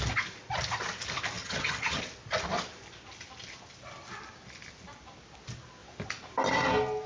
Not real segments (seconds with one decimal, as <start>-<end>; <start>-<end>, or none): 1.4-2.0